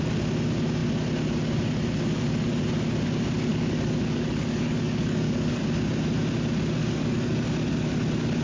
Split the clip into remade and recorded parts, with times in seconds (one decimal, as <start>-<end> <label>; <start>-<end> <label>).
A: 0.0-3.5 recorded; 3.5-5.6 remade; 5.6-6.8 recorded; 6.8-7.3 remade; 7.3-8.4 recorded